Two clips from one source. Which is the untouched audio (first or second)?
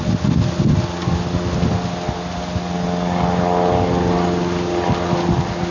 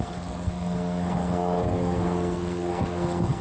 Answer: first